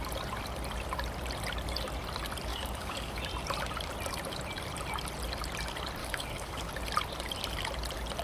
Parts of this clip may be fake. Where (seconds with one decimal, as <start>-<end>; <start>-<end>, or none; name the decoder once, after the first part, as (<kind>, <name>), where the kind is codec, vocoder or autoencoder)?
2.5-3.2 (codec, DAC); 6.0-6.7